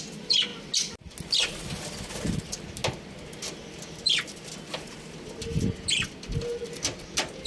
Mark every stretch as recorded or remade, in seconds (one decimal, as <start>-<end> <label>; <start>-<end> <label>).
0.0-7.5 recorded